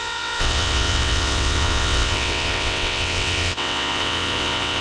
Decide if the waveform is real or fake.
fake